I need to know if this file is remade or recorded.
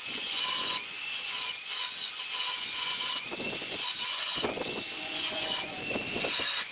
remade